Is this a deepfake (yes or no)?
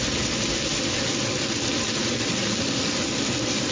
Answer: no